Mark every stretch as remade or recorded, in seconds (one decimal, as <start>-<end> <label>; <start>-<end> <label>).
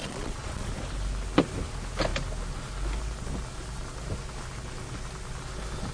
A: 0.0-0.7 remade; 0.7-5.9 recorded